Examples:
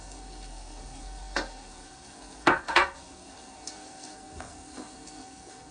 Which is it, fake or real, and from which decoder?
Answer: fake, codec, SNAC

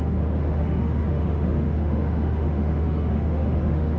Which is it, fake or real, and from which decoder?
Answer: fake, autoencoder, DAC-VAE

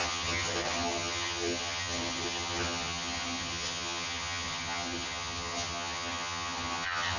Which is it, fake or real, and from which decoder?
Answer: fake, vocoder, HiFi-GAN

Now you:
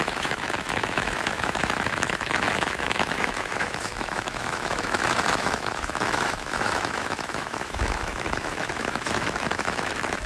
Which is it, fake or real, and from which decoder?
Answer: fake, autoencoder, DAC-VAE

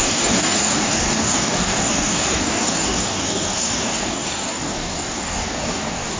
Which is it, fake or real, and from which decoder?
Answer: fake, codec, DAC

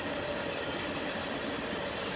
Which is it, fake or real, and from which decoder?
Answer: real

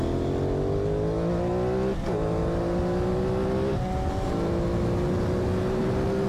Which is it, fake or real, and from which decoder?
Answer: real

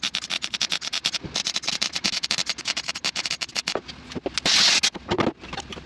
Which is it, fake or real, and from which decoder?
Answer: real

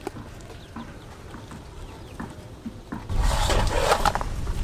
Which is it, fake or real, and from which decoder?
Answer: real